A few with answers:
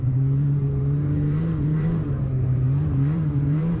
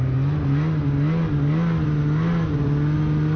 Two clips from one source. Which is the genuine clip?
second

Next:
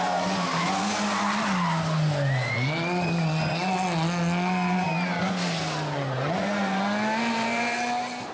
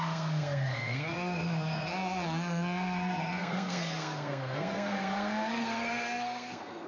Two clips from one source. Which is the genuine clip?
first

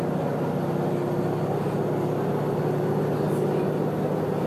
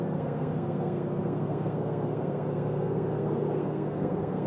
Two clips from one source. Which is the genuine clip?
first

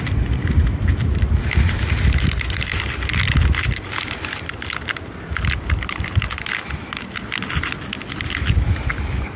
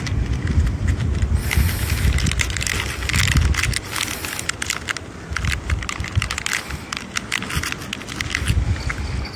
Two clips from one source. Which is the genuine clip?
second